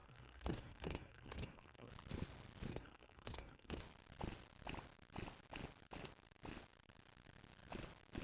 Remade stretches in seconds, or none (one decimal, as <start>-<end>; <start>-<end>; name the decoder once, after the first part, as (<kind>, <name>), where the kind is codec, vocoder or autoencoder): 0.0-1.9 (codec, SNAC); 2.7-3.8